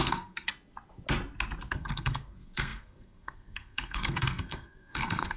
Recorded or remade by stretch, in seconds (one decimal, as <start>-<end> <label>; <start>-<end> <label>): 0.0-0.5 remade; 0.5-1.7 recorded; 1.7-5.4 remade